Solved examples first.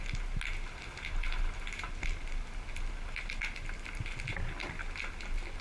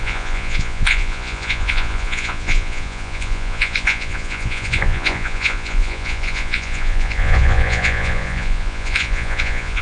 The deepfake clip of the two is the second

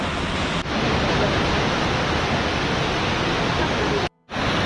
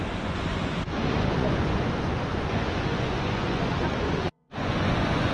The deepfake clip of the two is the second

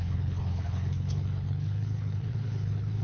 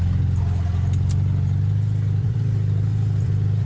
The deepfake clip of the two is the first